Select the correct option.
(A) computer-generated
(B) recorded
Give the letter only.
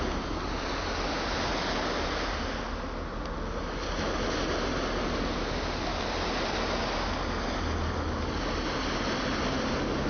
B